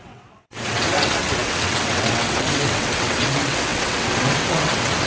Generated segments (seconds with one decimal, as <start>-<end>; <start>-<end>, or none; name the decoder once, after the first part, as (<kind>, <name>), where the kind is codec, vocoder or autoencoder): 0.0-5.1 (vocoder, WaveNeXt)